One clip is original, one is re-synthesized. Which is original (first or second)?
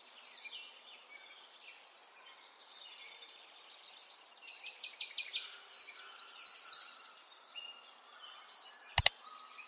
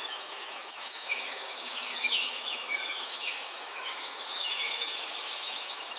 first